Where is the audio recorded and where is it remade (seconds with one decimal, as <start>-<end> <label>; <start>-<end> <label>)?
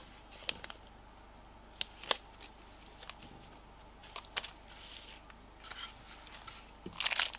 0.0-7.4 recorded